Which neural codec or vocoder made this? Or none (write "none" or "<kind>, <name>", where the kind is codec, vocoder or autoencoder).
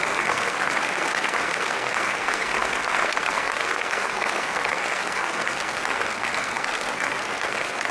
codec, SNAC